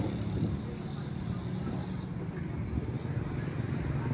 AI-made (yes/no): no